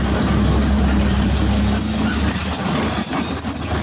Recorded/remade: recorded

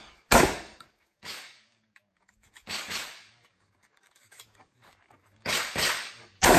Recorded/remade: remade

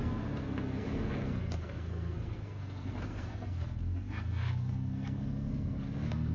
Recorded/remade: remade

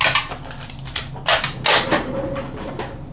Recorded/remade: recorded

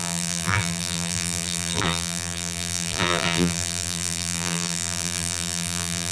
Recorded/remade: remade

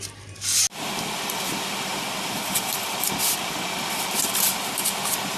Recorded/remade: recorded